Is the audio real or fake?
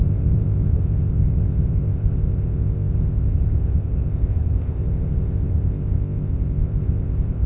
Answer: fake